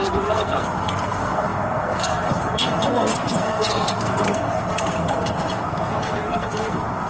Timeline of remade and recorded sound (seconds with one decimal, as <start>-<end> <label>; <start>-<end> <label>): 0.0-7.1 remade